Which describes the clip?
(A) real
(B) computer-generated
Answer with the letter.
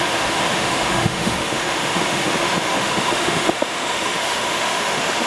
B